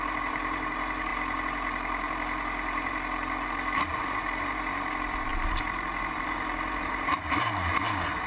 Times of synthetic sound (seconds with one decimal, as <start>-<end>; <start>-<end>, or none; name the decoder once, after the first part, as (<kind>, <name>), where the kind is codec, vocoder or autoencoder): 0.0-5.3 (vocoder, BigVGAN v2); 6.0-8.3